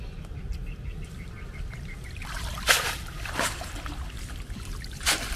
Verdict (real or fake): fake